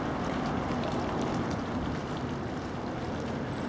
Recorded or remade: recorded